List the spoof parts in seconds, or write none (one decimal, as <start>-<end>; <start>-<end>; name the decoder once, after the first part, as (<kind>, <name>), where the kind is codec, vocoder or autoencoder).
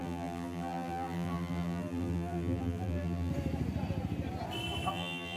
0.0-3.3 (vocoder, BigVGAN v2); 4.9-5.4